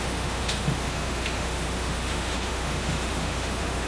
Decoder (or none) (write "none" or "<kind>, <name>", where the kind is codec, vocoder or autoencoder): autoencoder, DAC-VAE